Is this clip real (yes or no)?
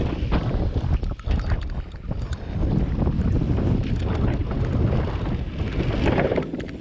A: yes